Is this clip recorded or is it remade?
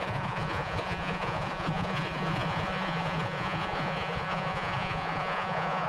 remade